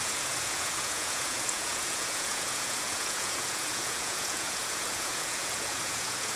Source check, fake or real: fake